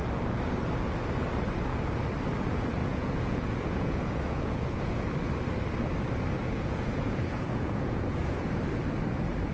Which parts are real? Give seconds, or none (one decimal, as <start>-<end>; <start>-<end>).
0.0-2.8; 5.1-6.4; 8.6-9.5